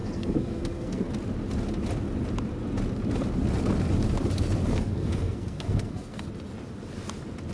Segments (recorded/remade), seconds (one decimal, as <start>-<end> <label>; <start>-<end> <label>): 0.0-1.1 remade; 1.1-4.7 recorded; 4.7-6.2 remade; 6.2-7.5 recorded